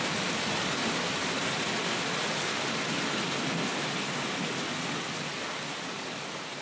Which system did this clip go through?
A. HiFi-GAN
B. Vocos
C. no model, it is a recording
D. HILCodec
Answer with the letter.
C